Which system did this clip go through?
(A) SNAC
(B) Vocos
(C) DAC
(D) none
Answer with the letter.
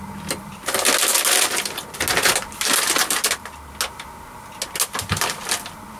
D